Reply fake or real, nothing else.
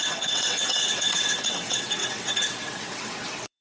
fake